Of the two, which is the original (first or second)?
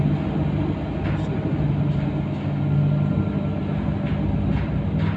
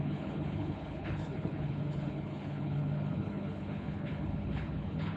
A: first